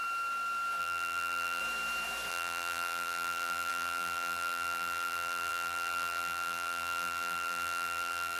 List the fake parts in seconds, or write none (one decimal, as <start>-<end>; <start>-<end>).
0.8-1.6; 2.3-8.4

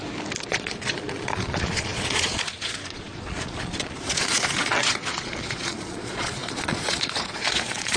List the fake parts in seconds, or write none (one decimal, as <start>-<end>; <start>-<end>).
0.5-8.0

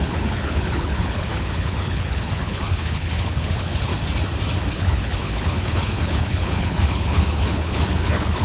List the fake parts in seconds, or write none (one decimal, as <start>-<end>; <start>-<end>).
0.0-3.9; 4.7-8.4

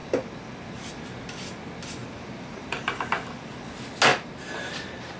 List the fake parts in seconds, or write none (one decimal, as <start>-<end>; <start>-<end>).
2.0-2.9; 4.1-5.2